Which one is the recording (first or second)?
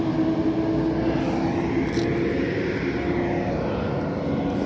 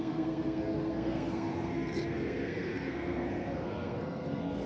first